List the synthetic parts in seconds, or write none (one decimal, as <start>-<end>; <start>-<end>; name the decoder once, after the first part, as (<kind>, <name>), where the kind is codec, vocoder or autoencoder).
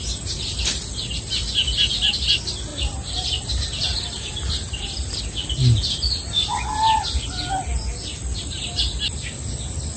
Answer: 2.7-5.2 (vocoder, BigVGAN v2); 8.2-8.8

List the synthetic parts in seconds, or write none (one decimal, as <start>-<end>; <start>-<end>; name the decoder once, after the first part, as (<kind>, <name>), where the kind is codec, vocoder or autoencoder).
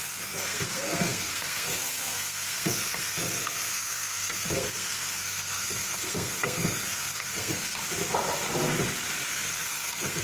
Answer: 0.0-7.8 (codec, SNAC); 9.3-10.2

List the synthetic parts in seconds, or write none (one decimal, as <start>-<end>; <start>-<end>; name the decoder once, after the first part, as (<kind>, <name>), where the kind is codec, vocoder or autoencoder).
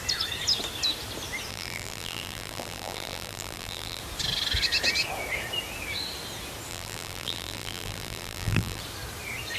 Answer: 1.5-4.0 (vocoder, BigVGAN v2); 6.7-8.8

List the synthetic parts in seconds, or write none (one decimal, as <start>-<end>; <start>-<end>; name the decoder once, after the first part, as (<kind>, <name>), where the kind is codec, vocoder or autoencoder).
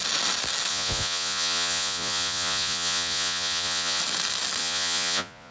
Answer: 0.7-4.0 (vocoder, Vocos); 4.6-5.5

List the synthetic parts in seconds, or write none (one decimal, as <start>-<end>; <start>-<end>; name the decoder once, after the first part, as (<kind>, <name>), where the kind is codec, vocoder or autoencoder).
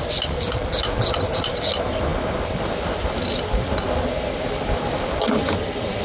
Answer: none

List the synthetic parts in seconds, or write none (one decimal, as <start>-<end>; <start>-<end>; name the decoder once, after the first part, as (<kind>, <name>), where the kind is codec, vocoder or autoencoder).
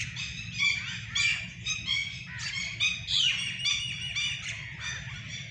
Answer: none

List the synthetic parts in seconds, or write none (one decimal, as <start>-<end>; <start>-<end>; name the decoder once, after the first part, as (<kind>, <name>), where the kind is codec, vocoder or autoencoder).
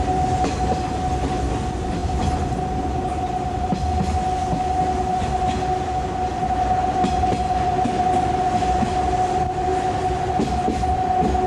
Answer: none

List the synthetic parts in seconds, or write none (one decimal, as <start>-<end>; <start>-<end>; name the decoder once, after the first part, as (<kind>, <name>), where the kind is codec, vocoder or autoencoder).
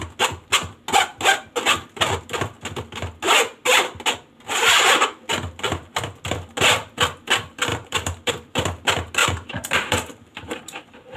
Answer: 7.7-8.3 (vocoder, BigVGAN v2); 9.2-11.2